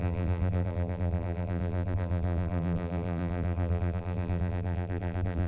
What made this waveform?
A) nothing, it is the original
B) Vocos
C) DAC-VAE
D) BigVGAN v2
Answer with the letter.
D